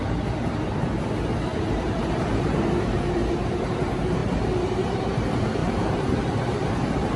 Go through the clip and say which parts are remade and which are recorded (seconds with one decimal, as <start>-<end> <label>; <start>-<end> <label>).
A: 0.0-7.2 remade